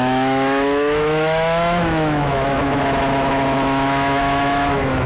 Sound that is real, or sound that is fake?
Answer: fake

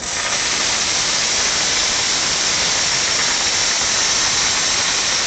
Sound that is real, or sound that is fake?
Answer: real